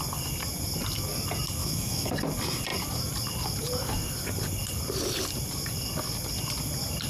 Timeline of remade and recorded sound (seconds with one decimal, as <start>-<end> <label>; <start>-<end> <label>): 0.0-1.6 recorded; 1.6-2.1 remade; 2.1-7.1 recorded